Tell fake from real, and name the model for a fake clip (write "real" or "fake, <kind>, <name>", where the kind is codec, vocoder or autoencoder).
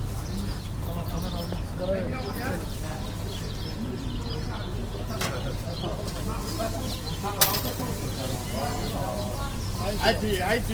real